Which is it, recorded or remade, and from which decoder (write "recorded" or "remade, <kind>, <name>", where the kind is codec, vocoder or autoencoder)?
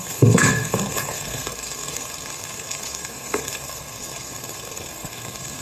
remade, codec, SNAC